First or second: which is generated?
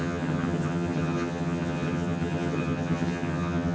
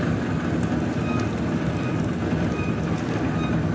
first